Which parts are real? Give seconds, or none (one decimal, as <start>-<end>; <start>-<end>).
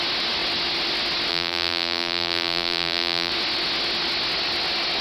0.0-1.3; 3.3-5.0